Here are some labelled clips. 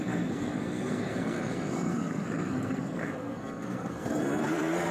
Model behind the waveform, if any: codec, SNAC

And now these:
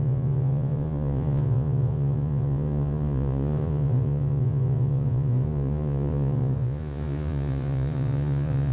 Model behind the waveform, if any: vocoder, Vocos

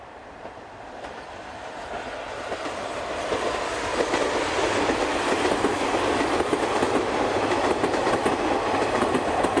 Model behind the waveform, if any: none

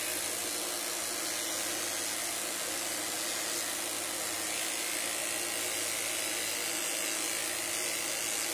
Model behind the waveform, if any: none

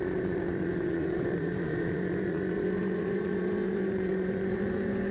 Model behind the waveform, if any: vocoder, Vocos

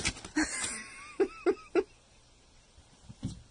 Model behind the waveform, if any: none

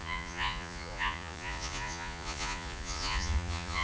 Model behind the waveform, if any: vocoder, Vocos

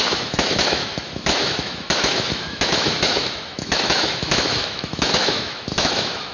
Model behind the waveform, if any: autoencoder, DAC-VAE